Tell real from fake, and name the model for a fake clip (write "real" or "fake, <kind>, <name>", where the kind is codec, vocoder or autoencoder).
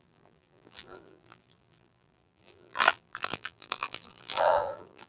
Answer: fake, vocoder, BigVGAN v2